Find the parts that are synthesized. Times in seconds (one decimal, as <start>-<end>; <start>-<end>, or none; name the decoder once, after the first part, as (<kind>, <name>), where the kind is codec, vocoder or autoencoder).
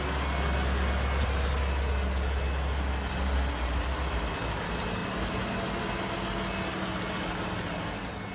5.0-5.9 (vocoder, BigVGAN v2)